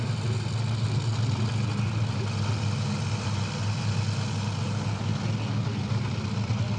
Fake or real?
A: real